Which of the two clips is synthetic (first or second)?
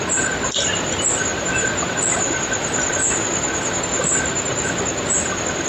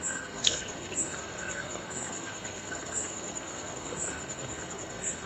second